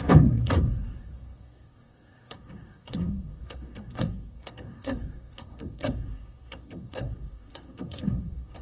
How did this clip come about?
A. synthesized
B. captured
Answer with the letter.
A